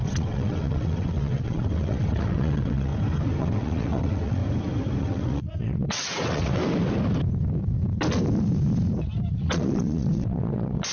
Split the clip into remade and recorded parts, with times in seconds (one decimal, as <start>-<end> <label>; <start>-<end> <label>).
0.0-2.9 remade; 2.9-3.4 recorded; 3.4-4.4 remade; 4.4-5.0 recorded; 5.0-6.6 remade; 6.6-9.3 recorded; 9.3-10.9 remade